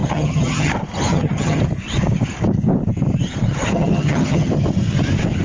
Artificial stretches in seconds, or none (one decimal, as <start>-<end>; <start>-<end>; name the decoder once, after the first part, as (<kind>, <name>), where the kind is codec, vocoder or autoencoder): 0.0-0.7 (vocoder, HiFi-GAN); 1.1-1.6; 3.7-4.5